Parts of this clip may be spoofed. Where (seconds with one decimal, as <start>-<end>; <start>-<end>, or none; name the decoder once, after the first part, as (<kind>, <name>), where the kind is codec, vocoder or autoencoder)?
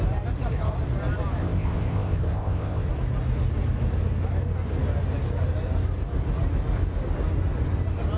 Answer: 1.4-2.9 (codec, ZipCodec)